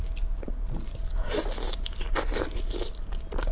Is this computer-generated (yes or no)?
no